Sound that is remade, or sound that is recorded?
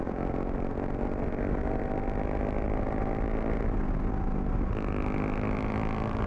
recorded